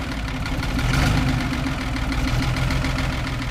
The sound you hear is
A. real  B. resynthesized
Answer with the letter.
A